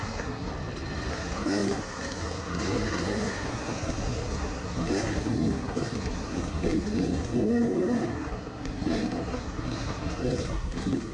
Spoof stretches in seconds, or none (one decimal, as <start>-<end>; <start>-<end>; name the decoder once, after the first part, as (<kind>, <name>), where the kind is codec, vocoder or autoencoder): 0.0-0.5 (codec, SNAC); 1.1-11.1